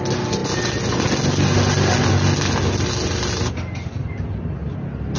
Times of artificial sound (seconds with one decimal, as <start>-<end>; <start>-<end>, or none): none